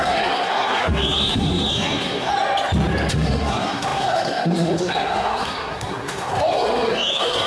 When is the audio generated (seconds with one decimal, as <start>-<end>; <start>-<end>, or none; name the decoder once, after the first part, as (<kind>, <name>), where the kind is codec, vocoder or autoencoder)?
0.0-2.3 (codec, SNAC); 3.1-7.5